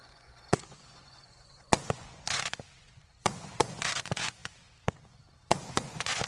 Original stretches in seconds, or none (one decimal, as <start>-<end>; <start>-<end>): none